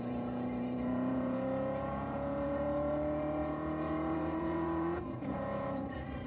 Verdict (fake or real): fake